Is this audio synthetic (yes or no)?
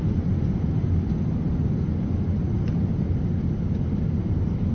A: no